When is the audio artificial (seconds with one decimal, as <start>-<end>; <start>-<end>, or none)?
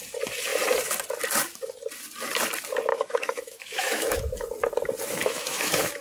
2.9-4.2; 5.2-6.0